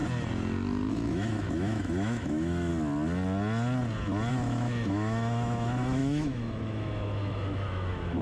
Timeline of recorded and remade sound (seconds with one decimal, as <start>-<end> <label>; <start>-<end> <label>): 0.0-0.9 recorded; 0.9-2.7 remade; 2.7-4.3 recorded; 4.3-8.2 remade